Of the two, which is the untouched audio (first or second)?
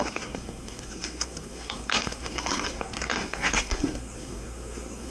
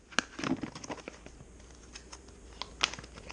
second